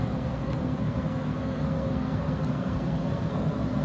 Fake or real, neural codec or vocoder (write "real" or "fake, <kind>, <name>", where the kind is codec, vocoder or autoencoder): fake, codec, SNAC